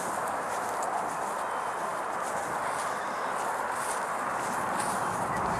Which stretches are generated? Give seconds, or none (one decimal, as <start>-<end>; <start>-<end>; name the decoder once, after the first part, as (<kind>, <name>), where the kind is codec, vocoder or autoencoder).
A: none